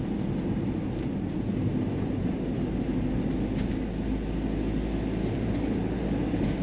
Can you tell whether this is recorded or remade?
recorded